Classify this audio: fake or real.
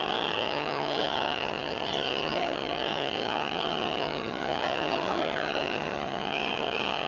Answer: fake